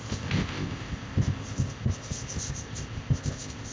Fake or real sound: fake